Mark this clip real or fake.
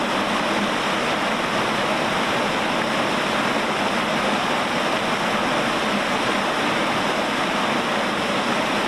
real